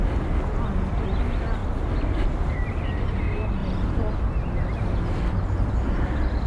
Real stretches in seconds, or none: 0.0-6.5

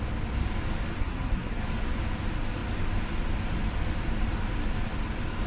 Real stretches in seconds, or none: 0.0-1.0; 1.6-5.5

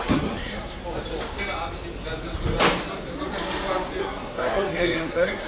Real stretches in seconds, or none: 0.8-4.0

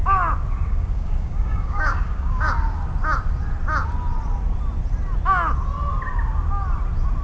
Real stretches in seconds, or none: 0.0-0.7; 2.5-7.2

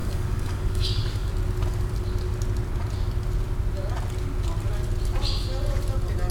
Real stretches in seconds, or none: 1.3-6.3

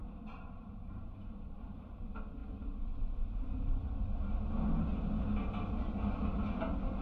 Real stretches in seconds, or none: 1.6-7.0